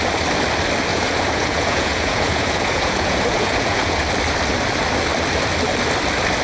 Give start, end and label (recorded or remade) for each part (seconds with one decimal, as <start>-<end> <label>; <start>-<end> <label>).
0.0-0.9 recorded; 0.9-4.0 remade; 4.0-6.4 recorded